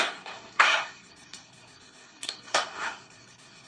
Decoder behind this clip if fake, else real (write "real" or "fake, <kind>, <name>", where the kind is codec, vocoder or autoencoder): fake, codec, SNAC